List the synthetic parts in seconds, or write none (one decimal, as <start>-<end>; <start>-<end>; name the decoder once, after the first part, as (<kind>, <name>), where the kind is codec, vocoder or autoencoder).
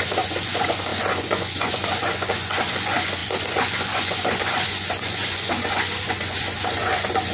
0.0-7.3 (vocoder, Vocos)